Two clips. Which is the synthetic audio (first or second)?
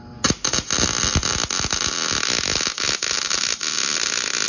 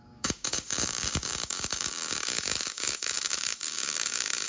second